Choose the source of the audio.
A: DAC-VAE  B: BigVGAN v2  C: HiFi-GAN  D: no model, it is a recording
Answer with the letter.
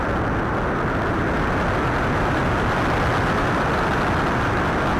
D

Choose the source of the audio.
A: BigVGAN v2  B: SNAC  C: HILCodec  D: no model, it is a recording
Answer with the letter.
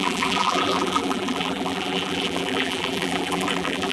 A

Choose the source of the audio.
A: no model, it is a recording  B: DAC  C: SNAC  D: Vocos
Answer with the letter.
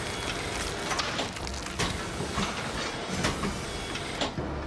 A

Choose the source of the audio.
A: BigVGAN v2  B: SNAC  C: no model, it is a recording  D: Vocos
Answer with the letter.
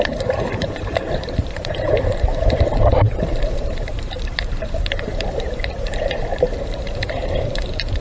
A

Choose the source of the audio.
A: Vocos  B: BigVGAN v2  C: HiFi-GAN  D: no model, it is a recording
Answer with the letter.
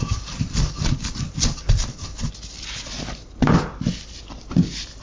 D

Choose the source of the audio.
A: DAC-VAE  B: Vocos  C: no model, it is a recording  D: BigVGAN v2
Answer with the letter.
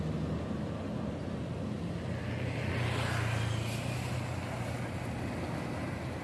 C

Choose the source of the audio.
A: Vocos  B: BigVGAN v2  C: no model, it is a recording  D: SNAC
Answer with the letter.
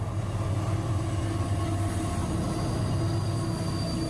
C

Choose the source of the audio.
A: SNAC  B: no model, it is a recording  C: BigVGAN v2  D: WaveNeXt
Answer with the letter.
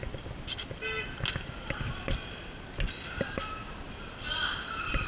B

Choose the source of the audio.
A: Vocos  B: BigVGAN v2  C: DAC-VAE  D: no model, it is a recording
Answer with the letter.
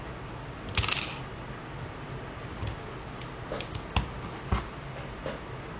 D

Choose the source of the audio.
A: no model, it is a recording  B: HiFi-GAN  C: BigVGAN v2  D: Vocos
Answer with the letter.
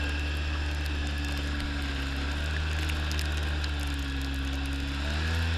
A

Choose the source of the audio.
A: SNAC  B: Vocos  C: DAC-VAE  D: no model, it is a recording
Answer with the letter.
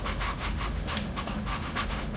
C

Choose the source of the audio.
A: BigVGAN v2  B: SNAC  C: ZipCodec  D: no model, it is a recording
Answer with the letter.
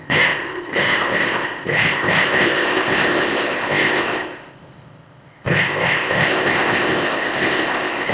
C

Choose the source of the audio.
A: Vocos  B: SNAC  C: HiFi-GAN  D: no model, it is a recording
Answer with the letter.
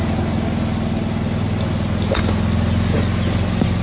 D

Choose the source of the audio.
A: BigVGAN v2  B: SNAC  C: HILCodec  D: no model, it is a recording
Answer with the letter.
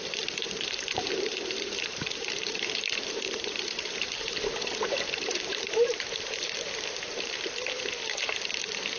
A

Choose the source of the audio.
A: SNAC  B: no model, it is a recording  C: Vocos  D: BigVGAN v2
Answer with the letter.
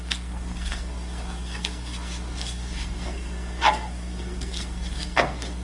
A